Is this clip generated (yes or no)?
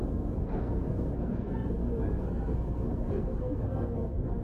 yes